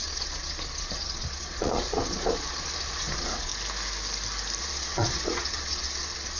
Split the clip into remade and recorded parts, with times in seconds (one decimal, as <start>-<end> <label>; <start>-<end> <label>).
0.0-3.5 remade; 3.5-4.6 recorded; 4.6-6.4 remade